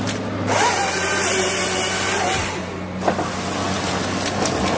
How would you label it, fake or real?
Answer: real